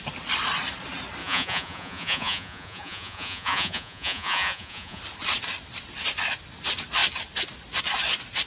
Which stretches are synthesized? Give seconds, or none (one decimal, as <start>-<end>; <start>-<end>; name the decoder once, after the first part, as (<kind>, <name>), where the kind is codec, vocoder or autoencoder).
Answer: 1.2-5.0 (vocoder, Vocos)